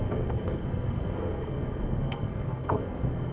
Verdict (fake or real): fake